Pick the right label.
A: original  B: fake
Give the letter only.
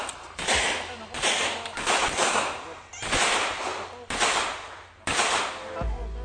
A